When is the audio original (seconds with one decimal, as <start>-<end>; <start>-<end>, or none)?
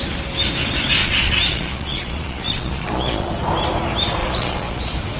0.0-1.0; 3.3-4.2; 4.8-5.2